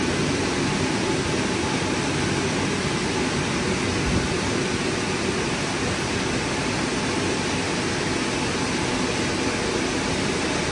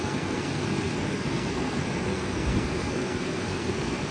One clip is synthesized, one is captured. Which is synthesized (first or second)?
second